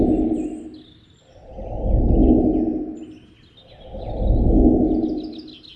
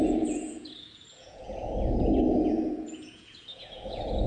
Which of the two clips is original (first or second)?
first